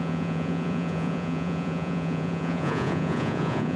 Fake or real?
fake